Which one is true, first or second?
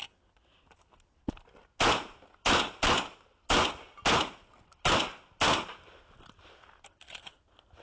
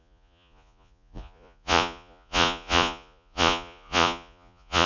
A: first